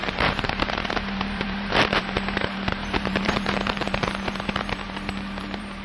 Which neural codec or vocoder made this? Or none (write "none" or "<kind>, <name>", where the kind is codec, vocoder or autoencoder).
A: vocoder, BigVGAN v2